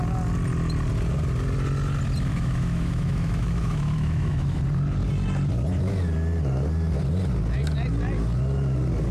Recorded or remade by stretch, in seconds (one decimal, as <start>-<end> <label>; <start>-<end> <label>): 0.0-2.3 recorded; 2.3-4.6 remade; 4.6-9.1 recorded